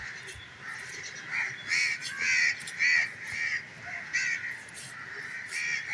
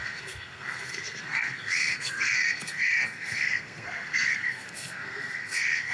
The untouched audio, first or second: first